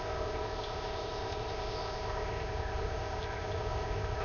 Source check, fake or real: fake